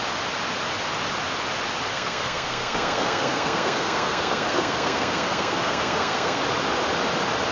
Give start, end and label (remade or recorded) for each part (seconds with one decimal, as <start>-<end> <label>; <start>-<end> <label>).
0.0-1.9 recorded; 1.9-6.4 remade; 6.4-7.5 recorded